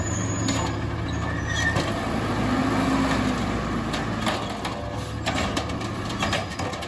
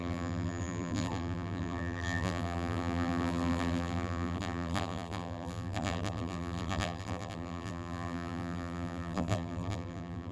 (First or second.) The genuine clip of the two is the first